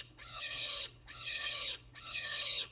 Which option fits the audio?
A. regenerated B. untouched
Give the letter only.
A